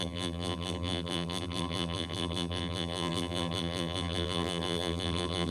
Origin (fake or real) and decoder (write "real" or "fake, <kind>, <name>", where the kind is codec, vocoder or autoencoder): fake, vocoder, BigVGAN v2